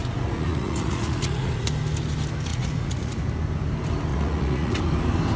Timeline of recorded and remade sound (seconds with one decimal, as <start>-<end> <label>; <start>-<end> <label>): 0.0-1.5 remade; 1.5-2.5 recorded; 2.5-3.2 remade; 3.2-4.1 recorded; 4.1-4.8 remade; 4.8-5.4 recorded